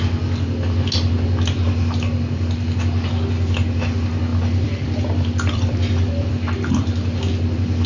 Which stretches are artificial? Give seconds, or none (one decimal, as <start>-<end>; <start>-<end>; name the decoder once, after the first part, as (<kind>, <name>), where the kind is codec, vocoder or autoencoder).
4.3-6.3 (vocoder, BigVGAN v2)